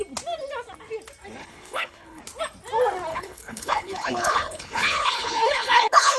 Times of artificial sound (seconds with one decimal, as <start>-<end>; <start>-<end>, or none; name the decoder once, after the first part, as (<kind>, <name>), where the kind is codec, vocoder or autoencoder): 1.4-2.2 (codec, HILCodec); 3.1-6.2

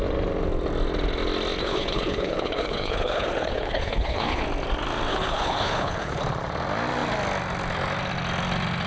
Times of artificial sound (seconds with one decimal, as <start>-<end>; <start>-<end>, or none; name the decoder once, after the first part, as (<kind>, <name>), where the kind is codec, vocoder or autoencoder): 1.6-4.4 (codec, HILCodec); 5.1-6.2